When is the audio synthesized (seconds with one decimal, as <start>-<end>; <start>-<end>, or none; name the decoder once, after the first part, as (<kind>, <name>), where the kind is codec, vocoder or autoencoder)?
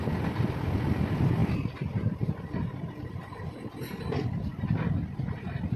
none